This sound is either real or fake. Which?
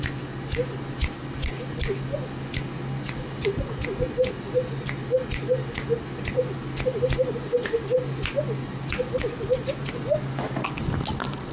real